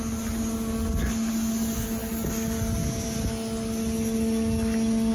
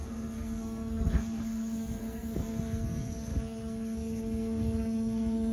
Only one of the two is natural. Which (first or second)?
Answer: first